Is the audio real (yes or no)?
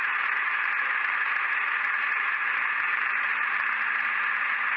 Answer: no